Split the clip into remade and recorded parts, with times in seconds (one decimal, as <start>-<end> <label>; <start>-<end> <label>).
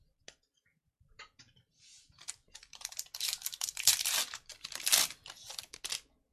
0.0-0.7 recorded; 0.7-4.5 remade; 4.5-6.3 recorded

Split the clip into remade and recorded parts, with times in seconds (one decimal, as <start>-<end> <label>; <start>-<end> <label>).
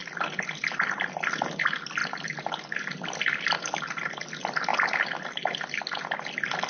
0.0-6.7 recorded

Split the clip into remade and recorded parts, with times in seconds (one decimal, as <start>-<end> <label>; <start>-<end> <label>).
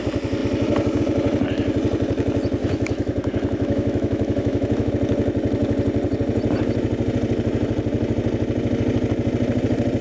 0.0-2.6 recorded; 2.6-4.9 remade; 4.9-10.0 recorded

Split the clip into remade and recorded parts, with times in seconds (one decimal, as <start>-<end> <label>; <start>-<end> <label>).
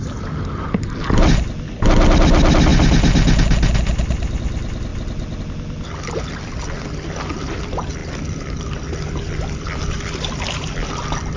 0.0-11.4 recorded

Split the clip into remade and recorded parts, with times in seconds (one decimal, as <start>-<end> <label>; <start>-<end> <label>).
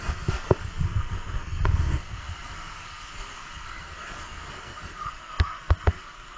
0.0-6.4 remade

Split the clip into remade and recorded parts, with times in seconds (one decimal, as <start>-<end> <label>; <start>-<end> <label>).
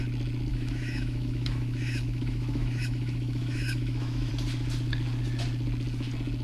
0.0-0.5 recorded; 0.5-4.3 remade; 4.3-6.4 recorded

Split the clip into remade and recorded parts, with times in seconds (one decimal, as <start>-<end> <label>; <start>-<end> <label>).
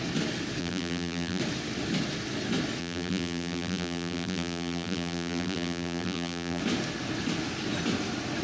0.0-0.6 recorded; 0.6-1.4 remade; 1.4-2.8 recorded; 2.8-6.6 remade; 6.6-8.4 recorded